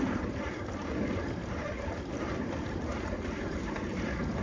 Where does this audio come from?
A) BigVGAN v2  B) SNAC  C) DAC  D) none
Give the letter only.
A